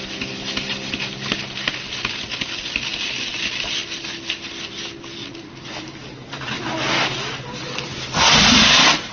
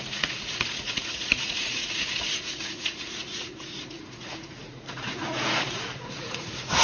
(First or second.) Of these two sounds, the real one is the first